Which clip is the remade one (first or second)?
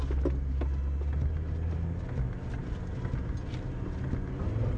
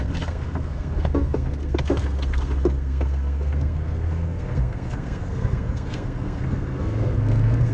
second